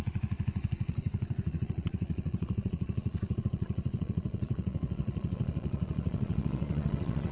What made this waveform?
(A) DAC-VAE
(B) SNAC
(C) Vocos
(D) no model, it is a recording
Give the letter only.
C